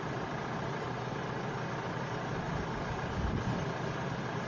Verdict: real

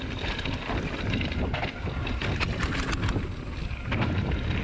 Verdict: real